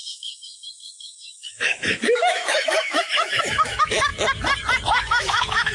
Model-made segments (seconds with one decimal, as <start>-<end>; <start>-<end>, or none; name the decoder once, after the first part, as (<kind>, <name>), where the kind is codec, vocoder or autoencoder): 0.0-4.1 (autoencoder, DAC-VAE); 5.0-5.7